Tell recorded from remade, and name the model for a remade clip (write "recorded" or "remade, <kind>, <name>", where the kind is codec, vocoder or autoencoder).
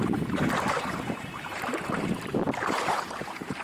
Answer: remade, vocoder, BigVGAN v2